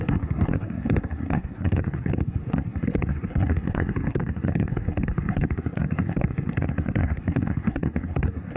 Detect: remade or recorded remade